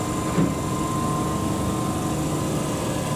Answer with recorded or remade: recorded